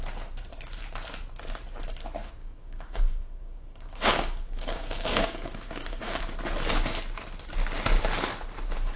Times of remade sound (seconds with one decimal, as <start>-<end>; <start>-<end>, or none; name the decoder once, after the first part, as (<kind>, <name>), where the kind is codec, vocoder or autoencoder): 2.4-6.2 (codec, DAC)